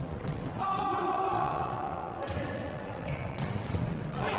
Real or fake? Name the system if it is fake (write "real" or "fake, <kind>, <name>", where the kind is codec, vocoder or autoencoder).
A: fake, vocoder, WaveNeXt